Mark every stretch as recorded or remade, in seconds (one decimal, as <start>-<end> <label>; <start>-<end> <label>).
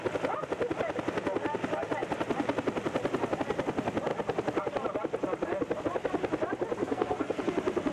0.0-6.8 recorded; 6.8-7.4 remade; 7.4-7.9 recorded